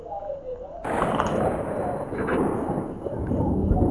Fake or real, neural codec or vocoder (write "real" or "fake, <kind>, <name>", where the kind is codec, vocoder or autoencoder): real